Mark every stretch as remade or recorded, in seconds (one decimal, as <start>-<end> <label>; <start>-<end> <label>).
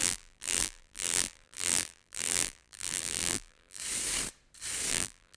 0.0-3.8 remade; 3.8-4.9 recorded; 4.9-5.4 remade